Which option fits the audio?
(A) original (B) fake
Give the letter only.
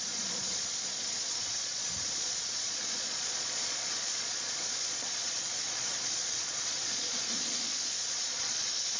B